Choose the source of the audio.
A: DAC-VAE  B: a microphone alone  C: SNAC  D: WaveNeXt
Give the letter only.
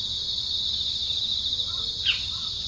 B